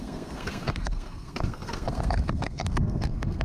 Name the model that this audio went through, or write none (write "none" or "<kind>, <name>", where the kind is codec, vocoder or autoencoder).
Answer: codec, SNAC